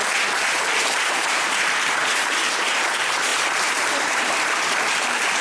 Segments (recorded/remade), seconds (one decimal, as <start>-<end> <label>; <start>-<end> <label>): 0.0-0.8 recorded; 0.8-5.4 remade